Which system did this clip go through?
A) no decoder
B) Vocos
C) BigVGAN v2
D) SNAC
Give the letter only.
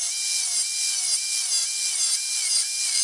A